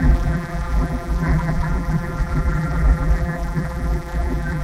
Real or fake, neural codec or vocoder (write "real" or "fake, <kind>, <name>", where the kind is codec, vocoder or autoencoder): fake, vocoder, BigVGAN v2